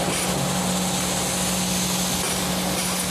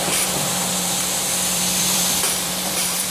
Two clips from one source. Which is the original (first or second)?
first